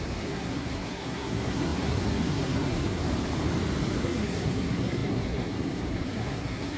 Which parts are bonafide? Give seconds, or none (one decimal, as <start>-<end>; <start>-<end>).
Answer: 3.0-4.0